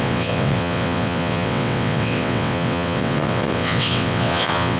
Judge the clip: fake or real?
fake